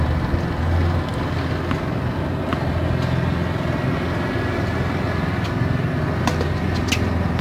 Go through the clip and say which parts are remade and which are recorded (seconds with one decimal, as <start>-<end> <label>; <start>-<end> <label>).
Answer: 0.0-7.4 recorded